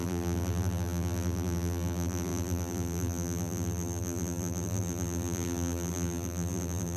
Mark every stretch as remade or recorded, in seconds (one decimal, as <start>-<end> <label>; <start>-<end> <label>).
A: 0.0-7.0 remade